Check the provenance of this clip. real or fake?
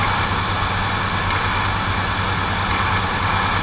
real